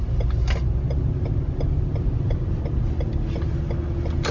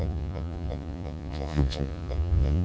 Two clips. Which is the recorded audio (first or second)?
first